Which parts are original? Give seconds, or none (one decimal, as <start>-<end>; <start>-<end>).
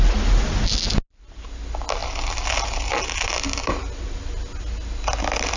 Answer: 0.0-5.6